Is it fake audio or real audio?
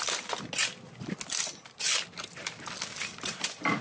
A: real